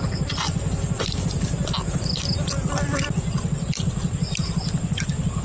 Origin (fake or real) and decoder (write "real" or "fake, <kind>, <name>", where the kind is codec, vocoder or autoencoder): real